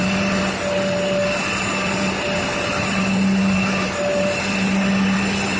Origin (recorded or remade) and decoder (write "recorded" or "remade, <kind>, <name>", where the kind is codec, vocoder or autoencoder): recorded